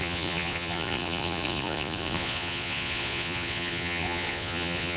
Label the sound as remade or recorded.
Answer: remade